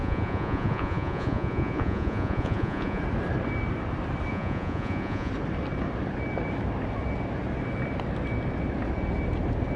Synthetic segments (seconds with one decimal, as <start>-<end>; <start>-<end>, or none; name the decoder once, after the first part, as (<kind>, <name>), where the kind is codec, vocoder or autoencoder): 0.0-3.0 (vocoder, Vocos); 4.3-5.3